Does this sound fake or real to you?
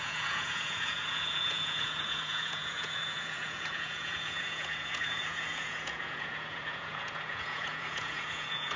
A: fake